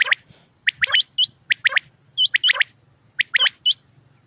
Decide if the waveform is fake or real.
real